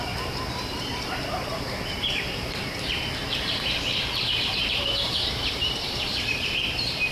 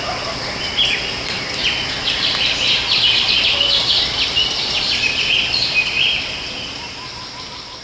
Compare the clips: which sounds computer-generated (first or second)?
first